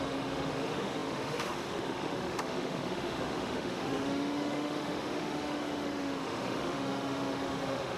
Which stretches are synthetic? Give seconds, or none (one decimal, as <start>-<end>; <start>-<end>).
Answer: 0.0-8.0